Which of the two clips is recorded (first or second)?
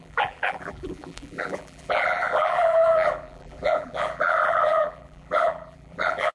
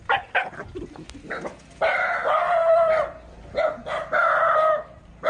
second